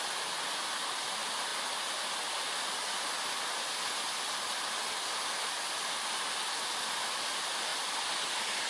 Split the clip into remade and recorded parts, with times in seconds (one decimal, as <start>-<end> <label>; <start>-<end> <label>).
0.0-8.7 recorded